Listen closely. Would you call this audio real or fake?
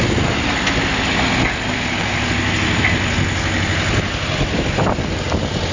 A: real